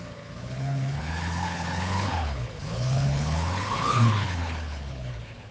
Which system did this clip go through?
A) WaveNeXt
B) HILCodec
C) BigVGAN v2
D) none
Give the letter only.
B